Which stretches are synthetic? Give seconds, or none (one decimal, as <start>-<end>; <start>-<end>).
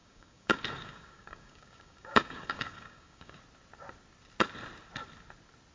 0.0-3.4